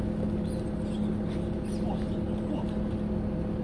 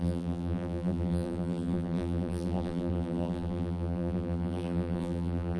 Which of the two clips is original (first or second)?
first